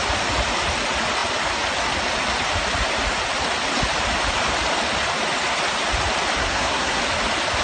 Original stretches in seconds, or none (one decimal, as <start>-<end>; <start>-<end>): 0.0-6.4; 7.0-7.6